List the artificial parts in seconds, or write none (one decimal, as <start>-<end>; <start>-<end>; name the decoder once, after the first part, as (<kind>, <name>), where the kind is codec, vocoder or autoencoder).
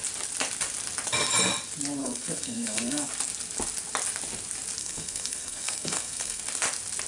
2.0-3.1 (codec, SNAC); 4.8-6.4